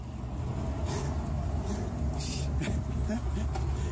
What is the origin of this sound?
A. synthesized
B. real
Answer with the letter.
B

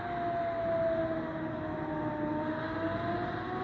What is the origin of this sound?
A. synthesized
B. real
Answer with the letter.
B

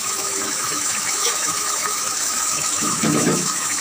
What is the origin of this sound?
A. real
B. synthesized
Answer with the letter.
B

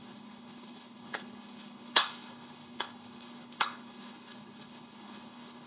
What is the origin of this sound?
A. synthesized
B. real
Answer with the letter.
A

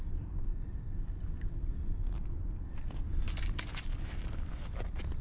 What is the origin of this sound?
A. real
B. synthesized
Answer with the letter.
A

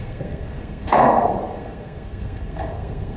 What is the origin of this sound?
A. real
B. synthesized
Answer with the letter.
B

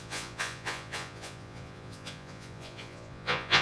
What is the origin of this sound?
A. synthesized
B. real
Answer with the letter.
A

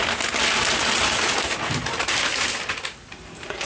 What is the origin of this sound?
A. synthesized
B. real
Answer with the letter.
B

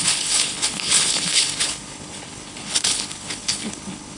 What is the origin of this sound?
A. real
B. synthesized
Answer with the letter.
B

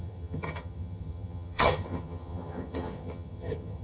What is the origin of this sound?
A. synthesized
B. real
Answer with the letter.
A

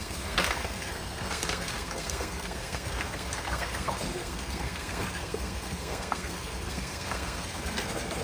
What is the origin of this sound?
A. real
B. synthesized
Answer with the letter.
B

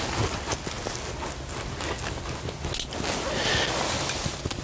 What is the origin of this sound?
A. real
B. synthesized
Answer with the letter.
A